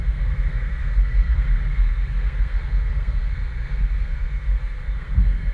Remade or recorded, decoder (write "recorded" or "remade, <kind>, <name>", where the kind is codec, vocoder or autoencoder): remade, codec, SNAC